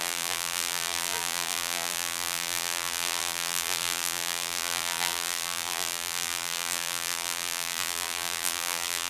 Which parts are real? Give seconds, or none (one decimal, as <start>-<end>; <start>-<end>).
none